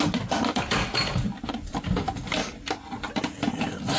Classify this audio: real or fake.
real